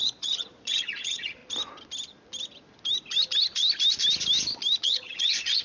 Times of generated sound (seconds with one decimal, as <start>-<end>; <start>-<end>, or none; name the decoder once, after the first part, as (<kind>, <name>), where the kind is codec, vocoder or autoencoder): 0.0-1.4 (vocoder, Vocos); 4.8-5.6